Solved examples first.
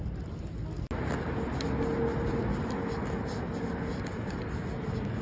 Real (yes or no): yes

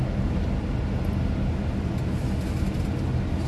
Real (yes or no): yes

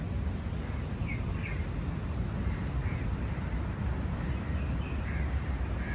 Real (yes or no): yes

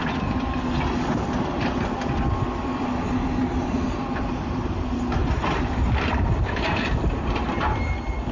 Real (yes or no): no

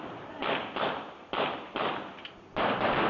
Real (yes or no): no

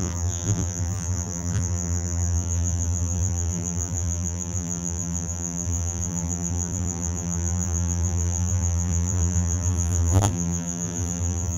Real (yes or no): no